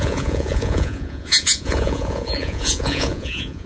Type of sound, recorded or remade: remade